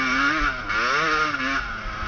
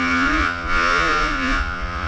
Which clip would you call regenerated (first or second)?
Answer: second